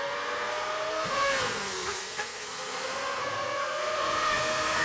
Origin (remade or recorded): remade